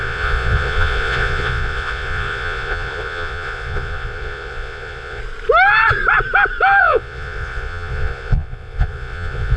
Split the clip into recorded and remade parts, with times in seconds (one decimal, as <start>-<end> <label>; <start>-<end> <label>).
0.0-5.2 remade; 5.2-6.8 recorded; 6.8-9.6 remade